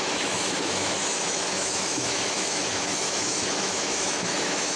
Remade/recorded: remade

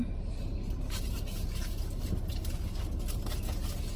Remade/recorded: recorded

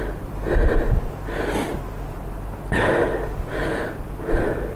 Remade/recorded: recorded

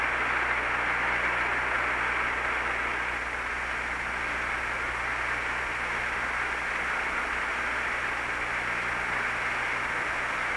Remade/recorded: recorded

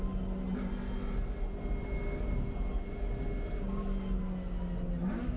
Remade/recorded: recorded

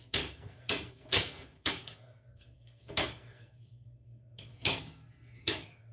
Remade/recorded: remade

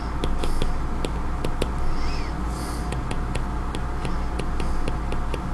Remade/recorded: recorded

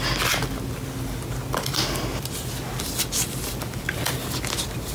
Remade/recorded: recorded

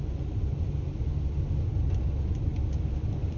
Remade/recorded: recorded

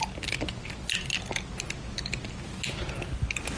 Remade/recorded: recorded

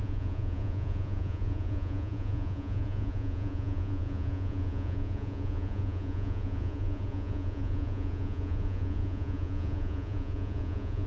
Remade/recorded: remade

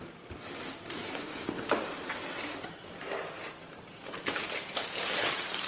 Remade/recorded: remade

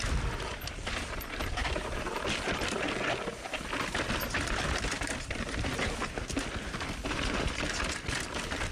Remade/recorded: remade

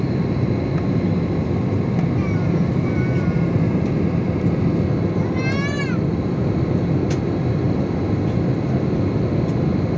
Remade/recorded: recorded